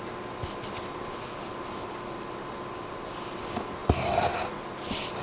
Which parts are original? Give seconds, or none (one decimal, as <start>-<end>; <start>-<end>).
0.0-5.2